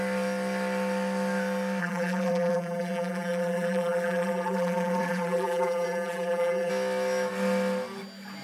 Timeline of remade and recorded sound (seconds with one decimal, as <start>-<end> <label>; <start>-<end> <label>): 0.0-1.8 recorded; 1.8-6.7 remade; 6.7-8.4 recorded